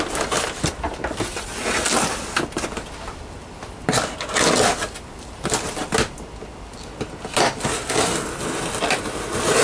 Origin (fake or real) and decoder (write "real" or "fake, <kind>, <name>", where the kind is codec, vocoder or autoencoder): real